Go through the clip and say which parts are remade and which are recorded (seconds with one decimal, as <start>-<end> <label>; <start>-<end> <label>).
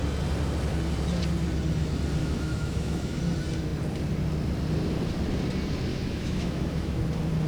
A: 0.0-2.2 recorded; 2.2-3.2 remade; 3.2-5.9 recorded; 5.9-7.0 remade; 7.0-7.5 recorded